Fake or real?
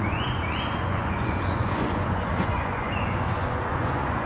fake